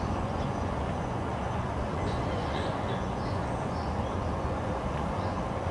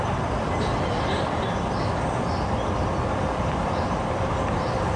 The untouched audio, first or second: second